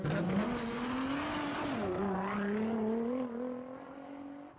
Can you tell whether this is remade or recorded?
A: recorded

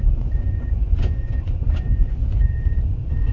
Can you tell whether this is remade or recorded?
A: remade